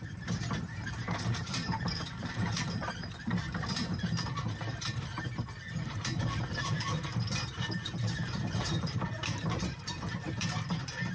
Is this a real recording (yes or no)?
no